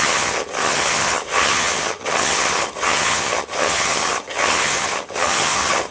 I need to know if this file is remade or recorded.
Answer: remade